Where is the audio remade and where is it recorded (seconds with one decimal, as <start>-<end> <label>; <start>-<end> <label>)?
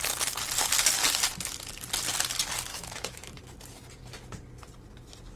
0.0-2.7 recorded; 2.7-3.4 remade; 3.4-5.4 recorded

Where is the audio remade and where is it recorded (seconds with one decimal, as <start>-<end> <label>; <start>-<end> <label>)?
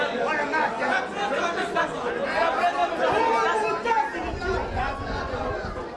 0.0-4.6 recorded; 4.6-5.4 remade; 5.4-6.0 recorded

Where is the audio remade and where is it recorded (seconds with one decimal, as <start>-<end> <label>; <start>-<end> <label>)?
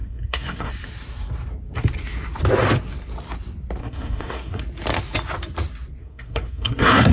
0.0-0.7 remade; 0.7-3.8 recorded; 3.8-4.6 remade; 4.6-6.0 recorded; 6.0-7.1 remade